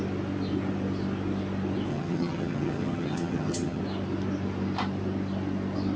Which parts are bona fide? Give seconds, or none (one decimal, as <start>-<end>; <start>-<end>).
0.0-1.9; 3.8-6.0